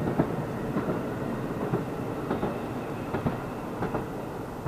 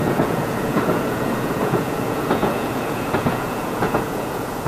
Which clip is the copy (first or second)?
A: second